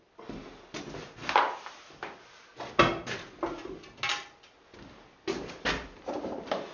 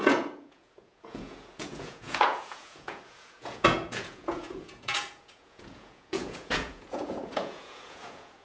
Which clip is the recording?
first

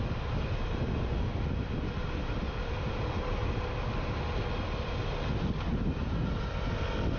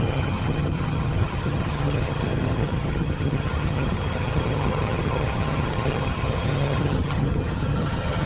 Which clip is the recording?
first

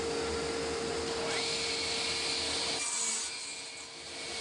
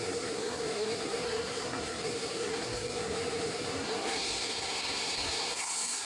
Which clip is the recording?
first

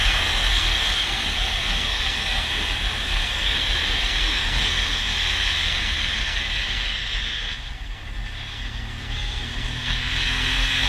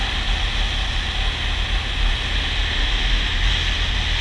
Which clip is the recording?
second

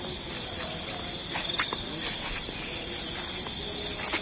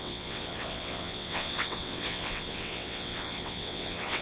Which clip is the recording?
first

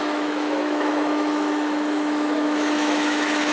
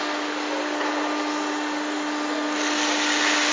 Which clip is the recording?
second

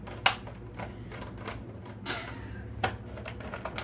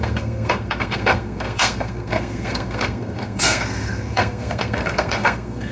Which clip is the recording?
first